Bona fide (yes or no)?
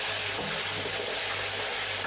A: yes